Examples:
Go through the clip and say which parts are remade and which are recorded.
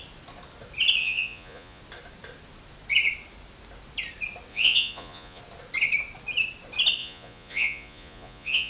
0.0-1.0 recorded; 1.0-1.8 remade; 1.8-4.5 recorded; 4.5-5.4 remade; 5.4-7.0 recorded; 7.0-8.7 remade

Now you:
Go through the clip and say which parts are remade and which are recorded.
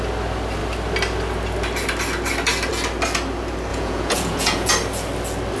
0.0-3.7 recorded; 3.7-4.7 remade; 4.7-5.6 recorded